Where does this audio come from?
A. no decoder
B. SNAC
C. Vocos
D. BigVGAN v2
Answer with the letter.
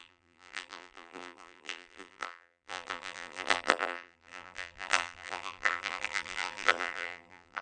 D